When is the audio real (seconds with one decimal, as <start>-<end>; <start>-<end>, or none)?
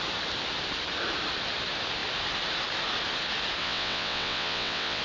0.0-3.6